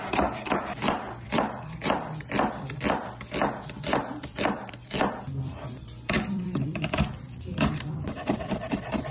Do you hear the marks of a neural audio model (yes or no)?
yes